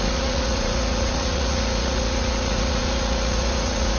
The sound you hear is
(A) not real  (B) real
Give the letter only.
A